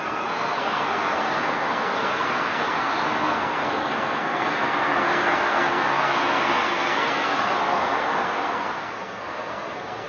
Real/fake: fake